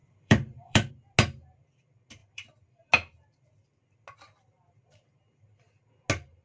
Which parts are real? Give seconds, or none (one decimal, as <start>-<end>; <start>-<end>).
0.9-2.2; 2.9-6.4